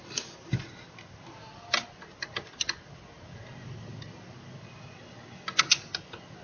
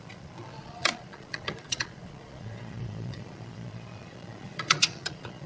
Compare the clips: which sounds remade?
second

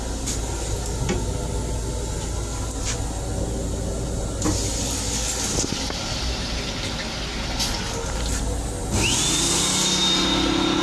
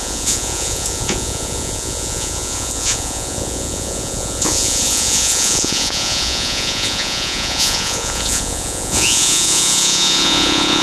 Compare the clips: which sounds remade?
second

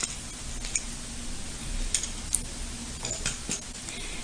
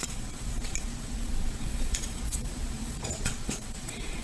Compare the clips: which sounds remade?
second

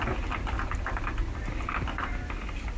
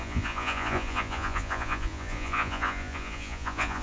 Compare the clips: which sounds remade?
second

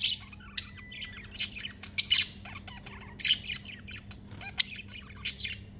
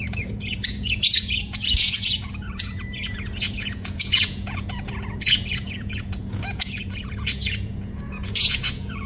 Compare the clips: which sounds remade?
second